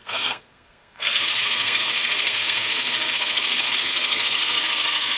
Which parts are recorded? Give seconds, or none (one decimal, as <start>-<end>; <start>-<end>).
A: none